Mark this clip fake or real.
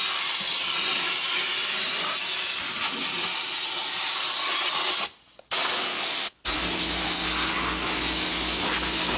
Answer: real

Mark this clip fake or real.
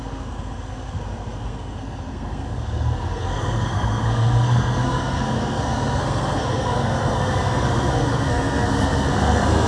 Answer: fake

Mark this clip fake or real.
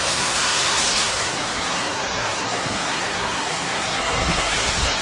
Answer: fake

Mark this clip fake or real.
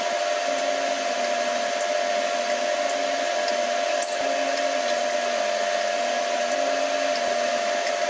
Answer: real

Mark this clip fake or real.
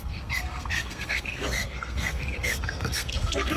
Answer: fake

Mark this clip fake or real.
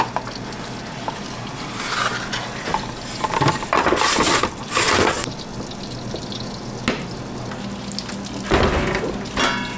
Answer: real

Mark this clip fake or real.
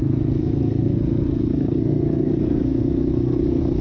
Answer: fake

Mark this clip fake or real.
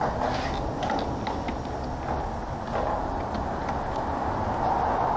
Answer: real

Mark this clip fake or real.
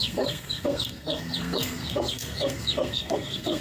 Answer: fake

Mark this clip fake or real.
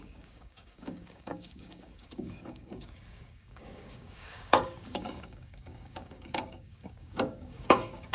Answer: fake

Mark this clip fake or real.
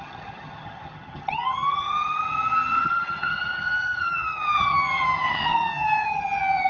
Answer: fake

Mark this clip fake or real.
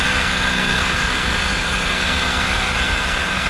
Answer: fake